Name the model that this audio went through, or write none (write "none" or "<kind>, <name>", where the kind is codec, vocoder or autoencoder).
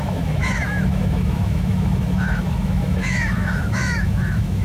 autoencoder, DAC-VAE